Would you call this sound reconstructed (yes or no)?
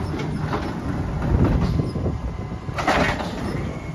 no